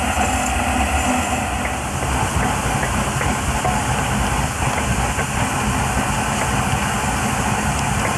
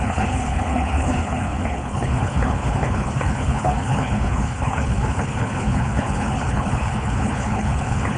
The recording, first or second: first